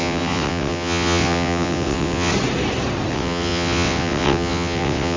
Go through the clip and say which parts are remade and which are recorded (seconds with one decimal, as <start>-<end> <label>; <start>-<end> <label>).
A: 0.0-2.3 remade; 2.3-3.1 recorded; 3.1-5.2 remade